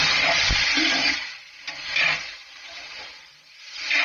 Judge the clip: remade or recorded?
remade